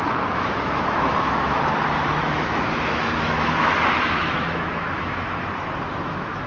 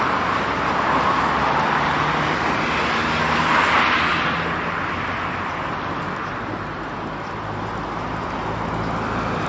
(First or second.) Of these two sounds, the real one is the second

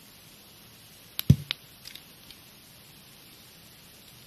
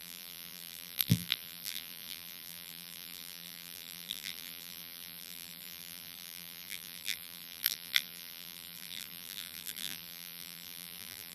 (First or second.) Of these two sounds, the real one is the first